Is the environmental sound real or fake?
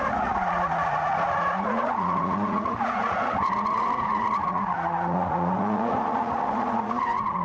fake